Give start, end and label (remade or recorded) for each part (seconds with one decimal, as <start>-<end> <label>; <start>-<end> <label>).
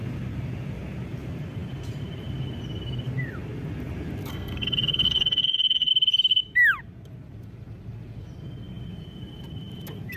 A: 0.0-4.3 recorded; 4.3-5.9 remade; 5.9-10.2 recorded